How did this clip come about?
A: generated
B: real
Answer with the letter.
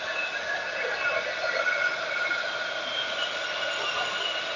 B